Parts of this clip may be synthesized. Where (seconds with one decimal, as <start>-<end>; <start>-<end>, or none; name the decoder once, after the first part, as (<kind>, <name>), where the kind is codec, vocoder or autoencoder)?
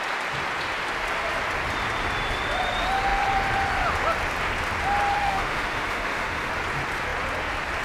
5.2-6.5 (autoencoder, DAC-VAE)